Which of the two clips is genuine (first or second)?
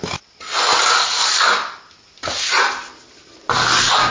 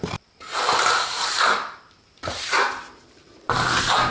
first